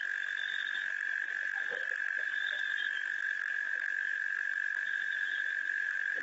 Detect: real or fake real